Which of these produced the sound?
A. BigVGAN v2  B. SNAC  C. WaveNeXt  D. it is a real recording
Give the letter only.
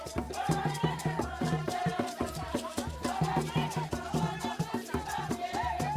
A